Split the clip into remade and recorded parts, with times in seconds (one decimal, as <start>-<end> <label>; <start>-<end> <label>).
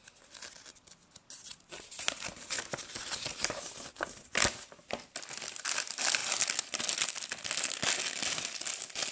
0.0-9.1 recorded